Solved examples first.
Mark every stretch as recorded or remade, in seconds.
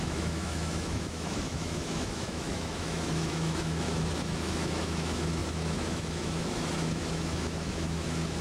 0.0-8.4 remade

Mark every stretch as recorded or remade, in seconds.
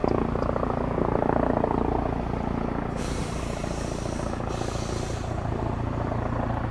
0.0-3.0 recorded; 3.0-6.7 remade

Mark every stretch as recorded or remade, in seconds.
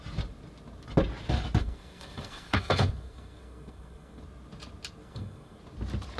0.0-1.6 recorded; 1.6-4.2 remade; 4.2-5.0 recorded; 5.0-5.6 remade; 5.6-6.2 recorded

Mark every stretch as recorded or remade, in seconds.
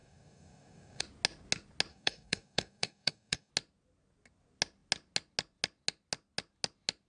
0.0-1.0 remade; 1.0-1.9 recorded; 1.9-3.5 remade; 3.5-7.1 recorded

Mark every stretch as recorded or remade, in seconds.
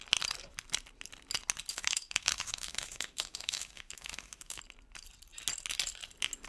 0.0-1.7 recorded; 1.7-4.6 remade; 4.6-6.5 recorded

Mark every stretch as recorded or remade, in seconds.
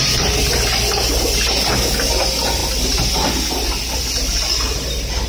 0.0-5.3 recorded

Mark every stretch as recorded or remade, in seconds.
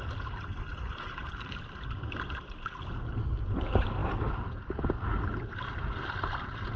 0.0-6.8 recorded